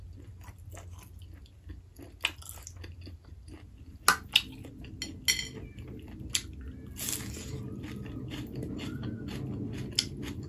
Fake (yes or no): no